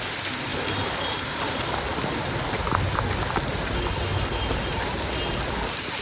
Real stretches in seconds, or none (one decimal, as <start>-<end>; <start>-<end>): 0.0-0.5; 2.5-4.1; 5.1-6.0